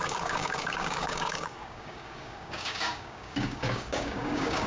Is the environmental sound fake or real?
fake